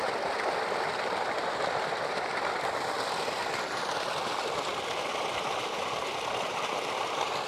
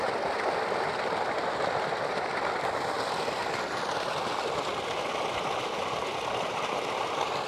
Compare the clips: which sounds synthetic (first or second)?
first